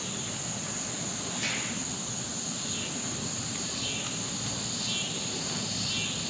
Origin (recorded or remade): recorded